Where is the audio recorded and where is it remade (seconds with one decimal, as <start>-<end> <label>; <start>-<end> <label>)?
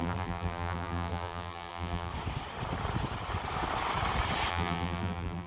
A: 0.0-2.1 remade; 2.1-4.5 recorded; 4.5-5.5 remade